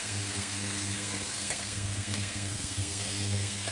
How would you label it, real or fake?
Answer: fake